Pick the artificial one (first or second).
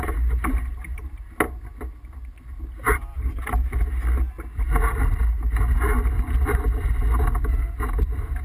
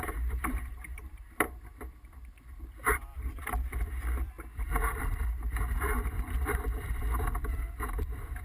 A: second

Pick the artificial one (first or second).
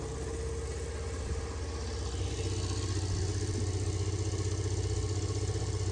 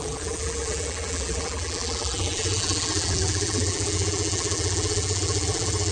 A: second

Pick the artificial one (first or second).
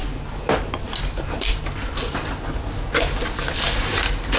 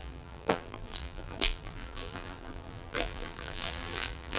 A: second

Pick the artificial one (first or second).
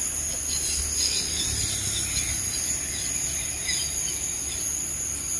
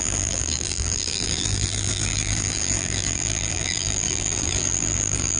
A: second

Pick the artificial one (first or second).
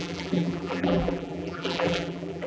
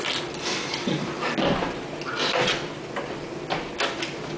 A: first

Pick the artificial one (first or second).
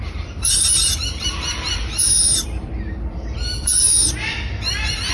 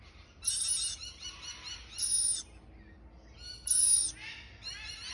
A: first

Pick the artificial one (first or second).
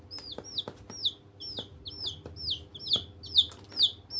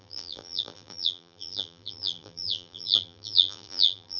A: second